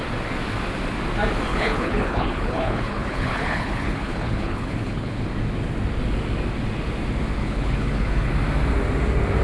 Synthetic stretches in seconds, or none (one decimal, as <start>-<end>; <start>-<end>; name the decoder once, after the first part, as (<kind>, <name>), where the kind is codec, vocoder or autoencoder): 1.5-5.2 (codec, HILCodec); 7.4-8.3

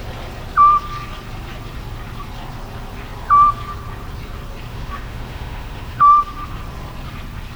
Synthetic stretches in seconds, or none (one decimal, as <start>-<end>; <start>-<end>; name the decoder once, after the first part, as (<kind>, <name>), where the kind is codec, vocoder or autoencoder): 4.7-6.6 (autoencoder, DAC-VAE)

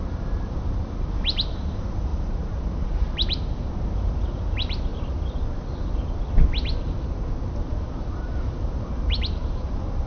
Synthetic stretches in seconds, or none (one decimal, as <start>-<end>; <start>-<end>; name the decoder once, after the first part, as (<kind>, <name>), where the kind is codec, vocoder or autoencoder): 0.0-4.9 (vocoder, BigVGAN v2); 7.6-10.1

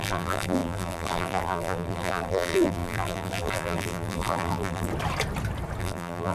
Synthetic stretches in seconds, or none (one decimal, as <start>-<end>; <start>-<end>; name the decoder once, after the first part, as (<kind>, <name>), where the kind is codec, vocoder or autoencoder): 0.0-4.9 (vocoder, BigVGAN v2); 5.8-6.3

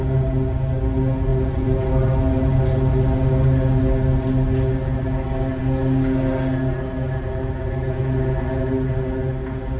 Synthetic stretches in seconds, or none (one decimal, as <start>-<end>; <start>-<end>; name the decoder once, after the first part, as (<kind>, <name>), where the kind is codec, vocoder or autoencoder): none